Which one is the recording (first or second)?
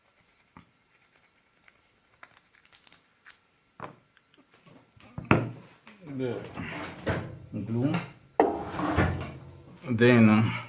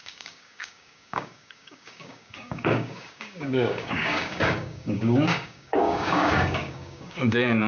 first